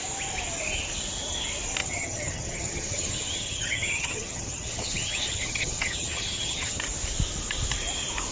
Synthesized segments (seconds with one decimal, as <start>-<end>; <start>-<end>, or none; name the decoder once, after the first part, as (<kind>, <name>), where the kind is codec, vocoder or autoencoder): 1.8-6.8 (vocoder, HiFi-GAN)